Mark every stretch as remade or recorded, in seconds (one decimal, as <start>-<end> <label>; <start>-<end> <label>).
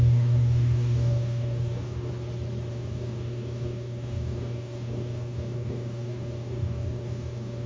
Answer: 0.0-2.1 remade; 2.1-2.7 recorded; 2.7-7.7 remade